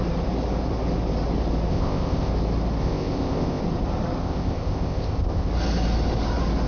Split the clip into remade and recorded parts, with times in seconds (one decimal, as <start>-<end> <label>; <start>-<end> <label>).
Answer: 0.0-1.7 recorded; 1.7-2.3 remade; 2.3-2.8 recorded; 2.8-3.6 remade; 3.6-4.2 recorded; 4.2-5.5 remade; 5.5-6.7 recorded

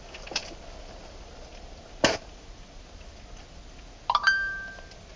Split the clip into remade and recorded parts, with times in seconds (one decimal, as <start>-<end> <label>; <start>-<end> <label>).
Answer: 0.0-5.2 recorded

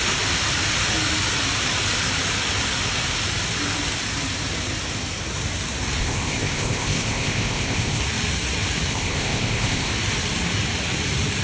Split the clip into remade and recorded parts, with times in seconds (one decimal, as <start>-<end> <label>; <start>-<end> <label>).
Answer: 0.0-6.0 recorded; 6.0-8.0 remade; 8.0-8.9 recorded; 8.9-9.9 remade; 9.9-11.4 recorded

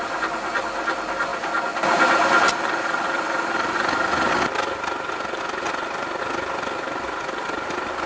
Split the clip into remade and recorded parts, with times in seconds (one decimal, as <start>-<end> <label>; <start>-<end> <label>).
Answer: 0.0-8.1 recorded